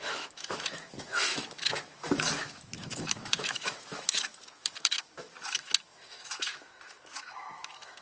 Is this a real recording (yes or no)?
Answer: no